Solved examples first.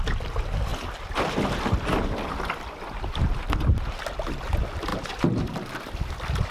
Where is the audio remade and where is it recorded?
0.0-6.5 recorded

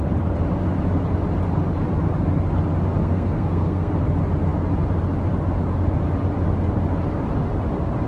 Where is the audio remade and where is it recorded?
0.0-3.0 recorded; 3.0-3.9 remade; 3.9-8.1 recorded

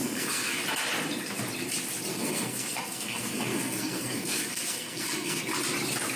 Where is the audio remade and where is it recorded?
0.0-0.6 remade; 0.6-2.1 recorded; 2.1-5.4 remade; 5.4-6.2 recorded